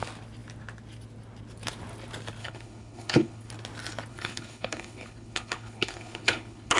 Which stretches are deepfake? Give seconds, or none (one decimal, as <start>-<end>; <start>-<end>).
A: 2.4-3.5; 4.1-6.8